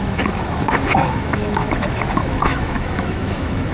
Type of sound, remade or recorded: remade